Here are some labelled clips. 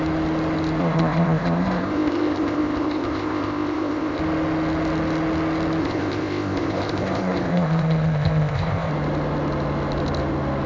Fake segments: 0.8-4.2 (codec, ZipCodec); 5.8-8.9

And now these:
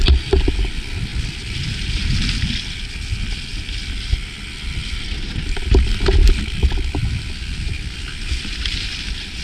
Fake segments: none